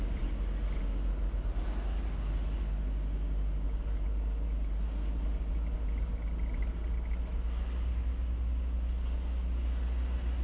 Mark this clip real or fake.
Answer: real